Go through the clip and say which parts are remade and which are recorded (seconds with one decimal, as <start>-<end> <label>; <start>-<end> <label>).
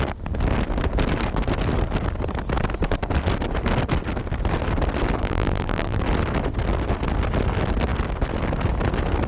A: 0.0-5.2 recorded; 5.2-6.0 remade; 6.0-9.3 recorded